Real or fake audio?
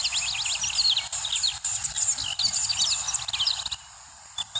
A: real